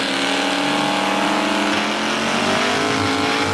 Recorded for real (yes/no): yes